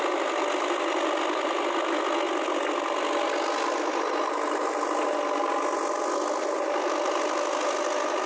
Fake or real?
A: real